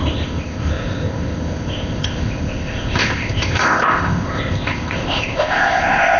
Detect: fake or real fake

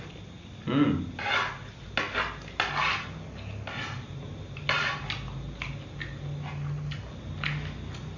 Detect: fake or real real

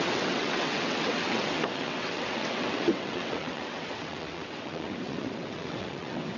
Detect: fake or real fake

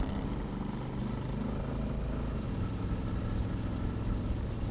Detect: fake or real real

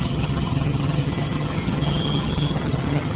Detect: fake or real fake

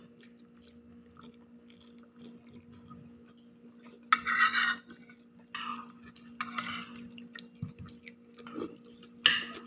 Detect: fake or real real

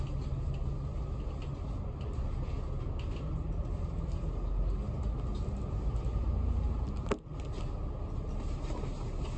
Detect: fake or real real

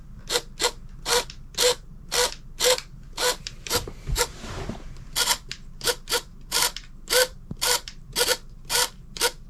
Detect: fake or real fake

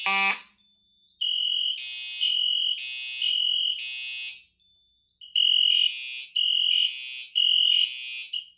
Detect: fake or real real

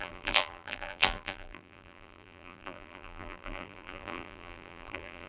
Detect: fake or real fake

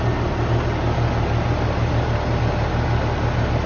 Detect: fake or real real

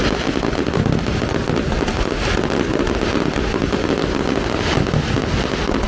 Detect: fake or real real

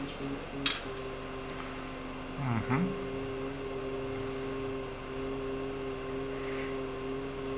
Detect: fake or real real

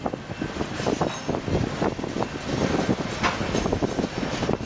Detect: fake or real real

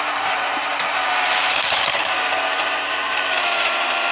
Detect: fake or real fake